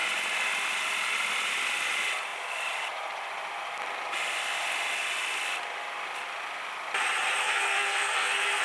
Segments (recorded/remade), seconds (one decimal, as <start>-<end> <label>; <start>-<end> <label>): 0.0-7.4 recorded; 7.4-8.6 remade